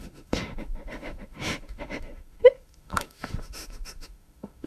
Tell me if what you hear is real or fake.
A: fake